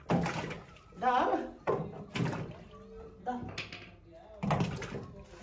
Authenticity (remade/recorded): recorded